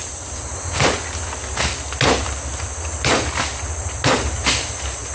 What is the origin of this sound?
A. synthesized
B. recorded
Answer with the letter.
B